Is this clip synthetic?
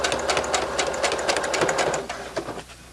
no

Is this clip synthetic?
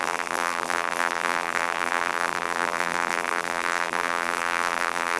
yes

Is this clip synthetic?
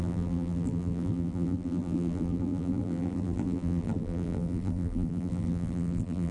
yes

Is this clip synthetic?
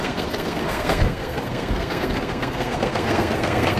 yes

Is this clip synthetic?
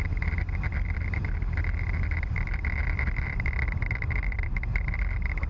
yes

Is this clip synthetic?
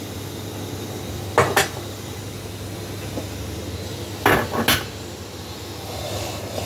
no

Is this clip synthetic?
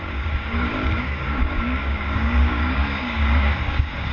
yes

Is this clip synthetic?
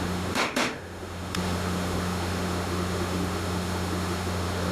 yes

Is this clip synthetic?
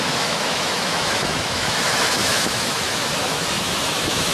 yes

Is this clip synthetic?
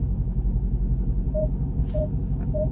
yes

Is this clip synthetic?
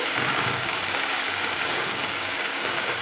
yes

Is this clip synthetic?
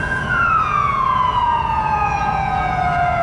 yes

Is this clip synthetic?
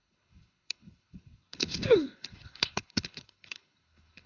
yes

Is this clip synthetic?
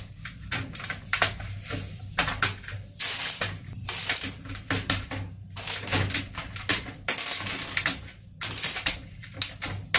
no